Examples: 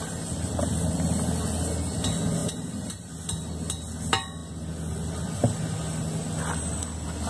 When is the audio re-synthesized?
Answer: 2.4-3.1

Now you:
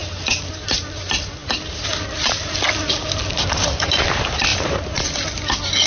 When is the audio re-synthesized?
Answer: 0.0-0.5

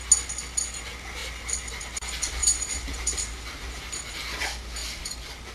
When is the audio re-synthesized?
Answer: 2.4-4.1; 4.8-5.5

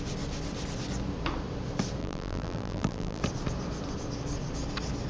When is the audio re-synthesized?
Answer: 2.0-3.2

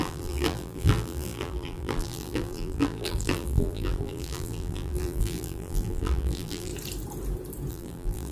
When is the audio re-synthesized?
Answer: 0.0-6.7; 7.7-8.3

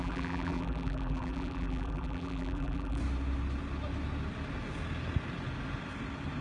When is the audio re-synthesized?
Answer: 0.0-3.0

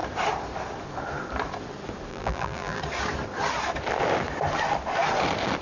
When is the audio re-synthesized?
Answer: 2.1-2.8